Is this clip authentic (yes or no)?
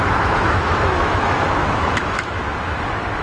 no